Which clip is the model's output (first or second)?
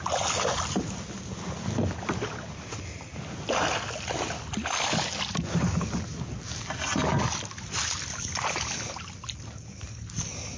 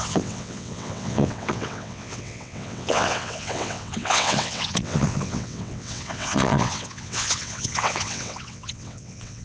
second